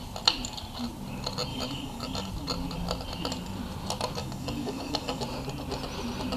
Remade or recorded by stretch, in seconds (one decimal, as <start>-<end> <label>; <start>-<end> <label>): 0.0-1.5 recorded; 1.5-2.3 remade; 2.3-4.2 recorded; 4.2-5.2 remade; 5.2-6.4 recorded